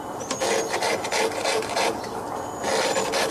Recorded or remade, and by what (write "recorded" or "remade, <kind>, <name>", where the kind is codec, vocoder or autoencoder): remade, vocoder, BigVGAN v2